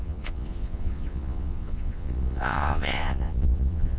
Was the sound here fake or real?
fake